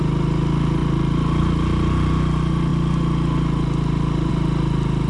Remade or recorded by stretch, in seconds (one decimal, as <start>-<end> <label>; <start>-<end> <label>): 0.0-5.1 recorded